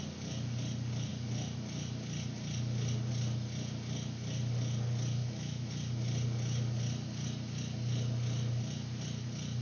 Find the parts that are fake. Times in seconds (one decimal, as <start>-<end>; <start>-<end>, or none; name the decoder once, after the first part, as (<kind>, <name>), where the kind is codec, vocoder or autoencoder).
5.2-5.7 (autoencoder, DAC-VAE)